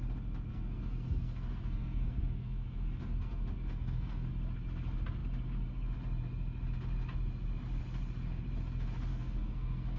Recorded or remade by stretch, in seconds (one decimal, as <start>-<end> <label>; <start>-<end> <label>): 0.0-0.5 recorded; 0.5-4.3 remade; 4.3-9.1 recorded; 9.1-10.0 remade